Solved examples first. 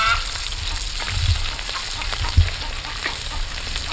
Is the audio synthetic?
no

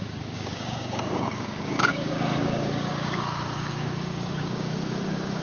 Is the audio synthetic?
yes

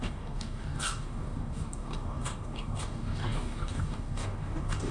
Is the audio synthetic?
yes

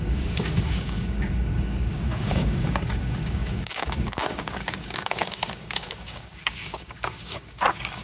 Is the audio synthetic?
yes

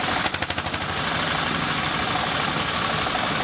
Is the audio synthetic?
no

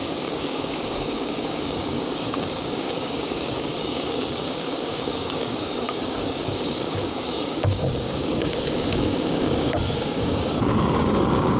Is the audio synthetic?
yes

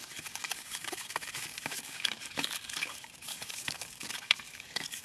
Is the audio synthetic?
yes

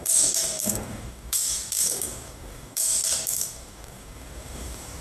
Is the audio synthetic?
yes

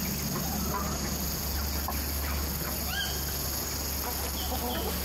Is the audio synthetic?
no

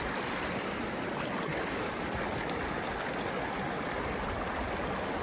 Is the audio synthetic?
no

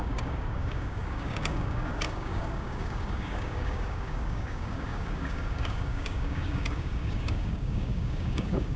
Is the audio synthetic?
yes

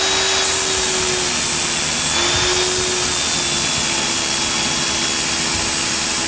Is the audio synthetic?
no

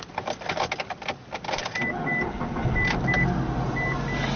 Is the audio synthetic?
no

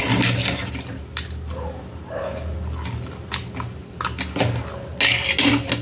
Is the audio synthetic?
no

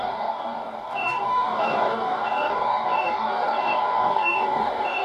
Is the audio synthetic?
yes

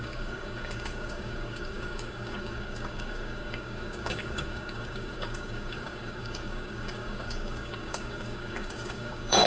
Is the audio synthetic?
yes